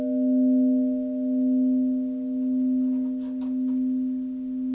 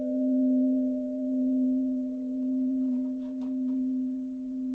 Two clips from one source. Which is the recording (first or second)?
first